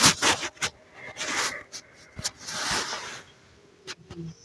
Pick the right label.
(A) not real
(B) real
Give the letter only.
B